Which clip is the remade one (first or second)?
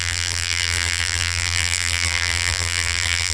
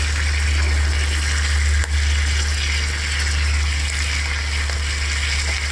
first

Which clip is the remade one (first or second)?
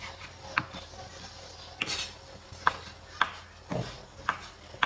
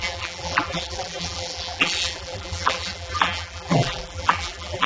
second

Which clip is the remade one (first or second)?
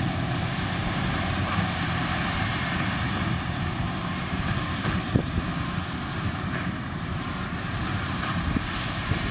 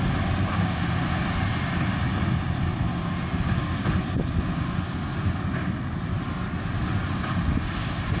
first